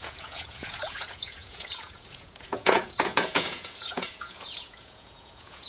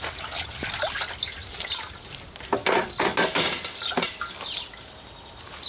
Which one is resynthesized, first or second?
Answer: first